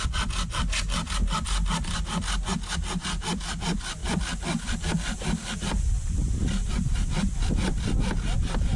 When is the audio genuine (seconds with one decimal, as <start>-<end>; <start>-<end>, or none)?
0.0-8.8

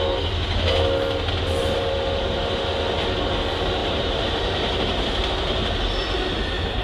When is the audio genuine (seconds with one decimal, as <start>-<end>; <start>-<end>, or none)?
0.0-1.6; 2.4-3.8; 5.3-6.8